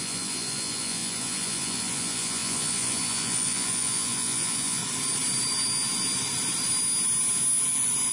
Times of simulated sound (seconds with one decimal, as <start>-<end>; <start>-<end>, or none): 0.0-4.8